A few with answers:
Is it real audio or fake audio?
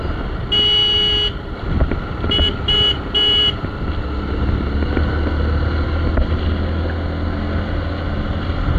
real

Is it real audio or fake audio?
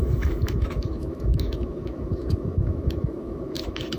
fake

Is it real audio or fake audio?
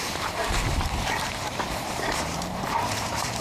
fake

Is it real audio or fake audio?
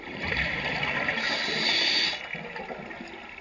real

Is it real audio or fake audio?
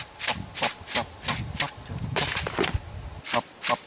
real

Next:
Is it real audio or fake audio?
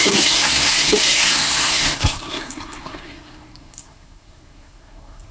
fake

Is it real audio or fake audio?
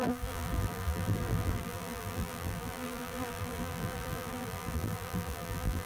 fake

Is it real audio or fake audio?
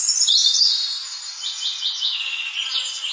real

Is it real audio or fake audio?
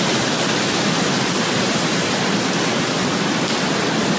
real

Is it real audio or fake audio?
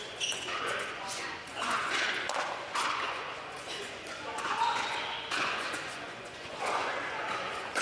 fake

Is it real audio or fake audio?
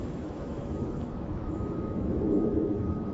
fake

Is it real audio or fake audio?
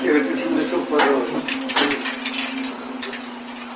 real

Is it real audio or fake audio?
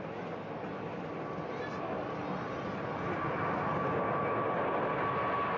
real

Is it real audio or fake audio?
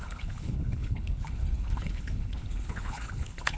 fake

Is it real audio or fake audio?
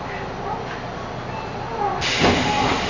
real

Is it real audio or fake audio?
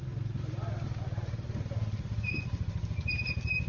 real